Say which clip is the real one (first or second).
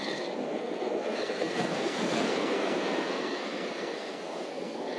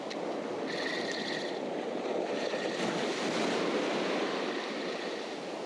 second